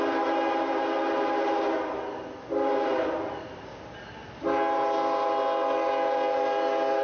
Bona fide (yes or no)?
yes